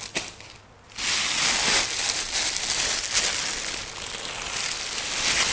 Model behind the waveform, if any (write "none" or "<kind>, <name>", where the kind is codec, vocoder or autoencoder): none